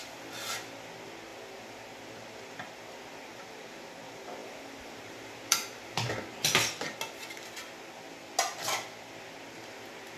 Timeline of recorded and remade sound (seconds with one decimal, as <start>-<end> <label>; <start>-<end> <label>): 0.0-4.4 recorded; 4.4-6.1 remade; 6.1-10.2 recorded